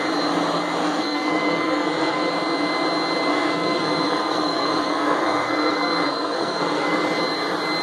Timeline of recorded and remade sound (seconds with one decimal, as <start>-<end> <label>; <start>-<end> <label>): 0.0-0.8 recorded; 0.8-2.3 remade; 2.3-3.3 recorded; 3.3-7.0 remade; 7.0-7.8 recorded